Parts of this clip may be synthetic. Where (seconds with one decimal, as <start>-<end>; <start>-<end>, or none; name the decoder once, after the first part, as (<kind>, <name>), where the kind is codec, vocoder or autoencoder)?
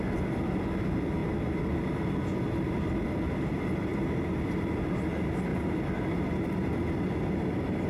3.9-4.8 (vocoder, BigVGAN v2)